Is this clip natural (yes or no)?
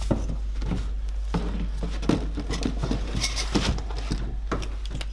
yes